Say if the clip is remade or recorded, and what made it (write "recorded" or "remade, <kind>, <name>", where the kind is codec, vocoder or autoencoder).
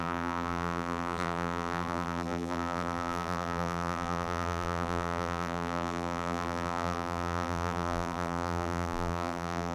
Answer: remade, vocoder, BigVGAN v2